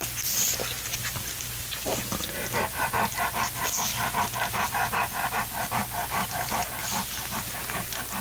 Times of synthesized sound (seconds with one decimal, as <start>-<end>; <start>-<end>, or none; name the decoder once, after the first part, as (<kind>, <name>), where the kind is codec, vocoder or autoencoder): none